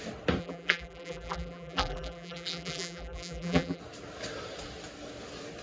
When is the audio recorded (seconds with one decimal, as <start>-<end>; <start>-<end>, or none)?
0.0-0.4; 3.8-5.6